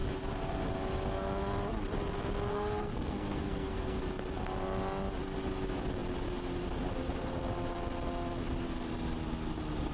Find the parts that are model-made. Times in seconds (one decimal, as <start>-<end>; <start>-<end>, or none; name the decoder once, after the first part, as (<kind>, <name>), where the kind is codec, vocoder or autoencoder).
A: 2.5-4.0 (codec, SNAC)